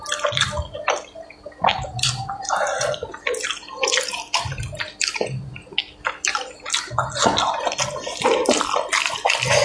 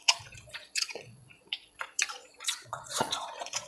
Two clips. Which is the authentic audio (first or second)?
first